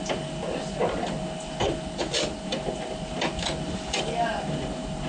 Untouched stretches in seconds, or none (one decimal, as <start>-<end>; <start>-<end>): 0.0-5.1